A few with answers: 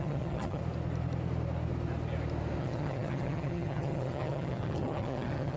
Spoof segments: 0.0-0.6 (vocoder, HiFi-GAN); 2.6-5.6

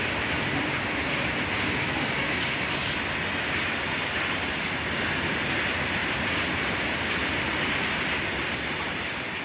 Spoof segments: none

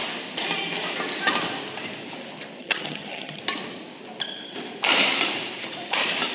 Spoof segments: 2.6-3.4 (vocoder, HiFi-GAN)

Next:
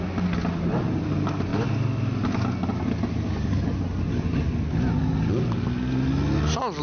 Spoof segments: none